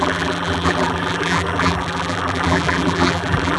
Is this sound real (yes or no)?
no